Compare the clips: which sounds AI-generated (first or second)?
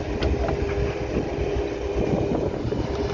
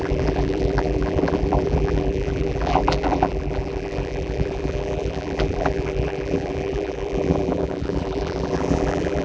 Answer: second